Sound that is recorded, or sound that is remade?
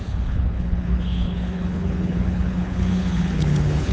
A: remade